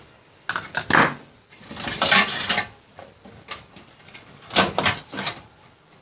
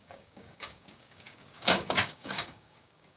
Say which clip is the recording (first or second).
first